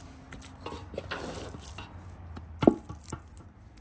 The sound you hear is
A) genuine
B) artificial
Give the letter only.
A